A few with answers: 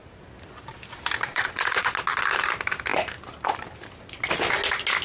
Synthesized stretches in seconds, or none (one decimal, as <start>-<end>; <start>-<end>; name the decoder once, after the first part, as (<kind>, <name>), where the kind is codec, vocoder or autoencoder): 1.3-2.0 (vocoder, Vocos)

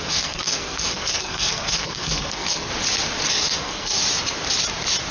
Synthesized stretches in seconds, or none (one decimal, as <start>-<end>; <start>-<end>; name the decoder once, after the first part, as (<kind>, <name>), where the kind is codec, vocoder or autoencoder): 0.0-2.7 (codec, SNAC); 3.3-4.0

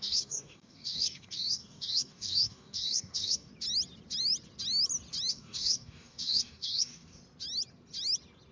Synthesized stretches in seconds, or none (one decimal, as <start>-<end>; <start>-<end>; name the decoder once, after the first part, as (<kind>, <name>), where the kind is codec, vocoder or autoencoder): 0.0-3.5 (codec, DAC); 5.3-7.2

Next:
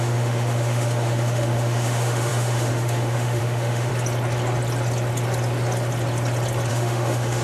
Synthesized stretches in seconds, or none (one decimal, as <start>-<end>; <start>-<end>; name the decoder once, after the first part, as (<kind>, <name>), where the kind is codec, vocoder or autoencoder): 0.0-3.9 (autoencoder, DAC-VAE); 6.7-7.4

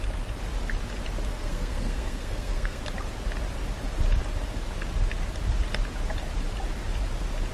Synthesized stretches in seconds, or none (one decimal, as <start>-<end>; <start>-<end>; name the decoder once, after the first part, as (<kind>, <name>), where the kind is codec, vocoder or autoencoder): 1.3-2.8 (codec, SNAC)

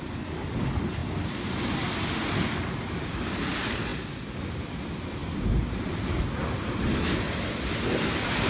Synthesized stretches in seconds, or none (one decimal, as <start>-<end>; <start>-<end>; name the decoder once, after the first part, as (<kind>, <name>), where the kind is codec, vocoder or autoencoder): none

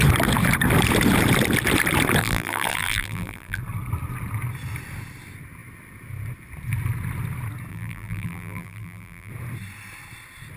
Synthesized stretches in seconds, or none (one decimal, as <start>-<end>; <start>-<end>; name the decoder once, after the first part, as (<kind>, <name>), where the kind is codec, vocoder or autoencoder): 2.2-3.6 (vocoder, BigVGAN v2); 7.7-9.3

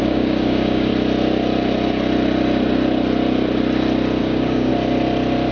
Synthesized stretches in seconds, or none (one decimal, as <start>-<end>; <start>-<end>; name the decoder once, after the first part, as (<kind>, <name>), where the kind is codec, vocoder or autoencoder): 0.0-0.9 (codec, DAC); 4.2-4.7